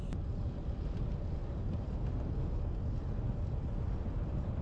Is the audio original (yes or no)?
yes